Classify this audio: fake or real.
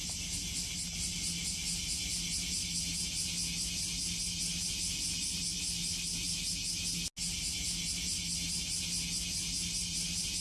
real